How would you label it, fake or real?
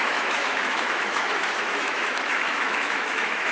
fake